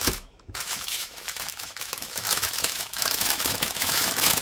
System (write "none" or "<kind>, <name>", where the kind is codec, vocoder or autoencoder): autoencoder, DAC-VAE